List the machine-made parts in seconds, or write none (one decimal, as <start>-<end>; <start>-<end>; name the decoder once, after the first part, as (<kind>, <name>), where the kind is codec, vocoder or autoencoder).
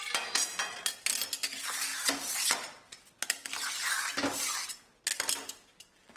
none